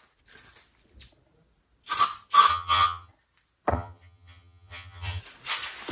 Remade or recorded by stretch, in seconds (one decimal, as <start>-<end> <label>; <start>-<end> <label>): 0.0-2.5 recorded; 2.5-3.1 remade; 3.1-3.7 recorded; 3.7-5.2 remade; 5.2-5.9 recorded